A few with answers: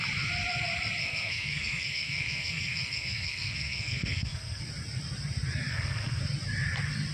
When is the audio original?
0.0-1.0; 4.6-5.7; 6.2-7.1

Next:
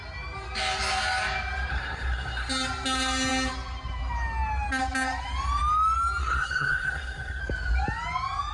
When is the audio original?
0.0-1.7; 2.5-6.2; 7.4-8.5

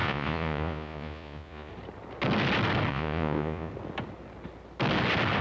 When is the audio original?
1.7-2.9; 3.7-5.4